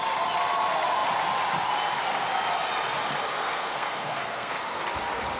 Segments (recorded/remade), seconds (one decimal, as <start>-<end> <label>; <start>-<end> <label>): 0.0-3.3 recorded; 3.3-4.8 remade; 4.8-5.4 recorded